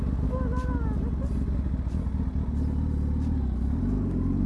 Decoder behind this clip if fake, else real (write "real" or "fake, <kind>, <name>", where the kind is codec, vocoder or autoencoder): real